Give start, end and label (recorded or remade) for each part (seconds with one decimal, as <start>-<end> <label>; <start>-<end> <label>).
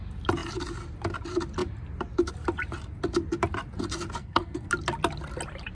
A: 0.0-4.2 recorded; 4.2-4.7 remade; 4.7-5.7 recorded